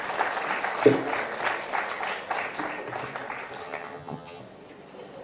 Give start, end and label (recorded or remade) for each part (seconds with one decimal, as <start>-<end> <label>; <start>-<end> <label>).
0.0-3.6 recorded; 3.6-4.4 remade; 4.4-5.2 recorded